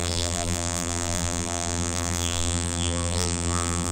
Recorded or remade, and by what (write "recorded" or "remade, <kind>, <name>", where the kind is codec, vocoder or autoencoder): remade, vocoder, BigVGAN v2